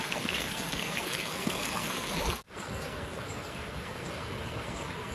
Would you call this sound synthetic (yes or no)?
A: yes